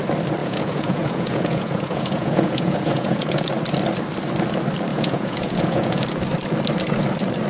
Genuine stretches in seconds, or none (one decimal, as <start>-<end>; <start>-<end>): 0.0-0.4; 3.5-4.9; 6.0-7.5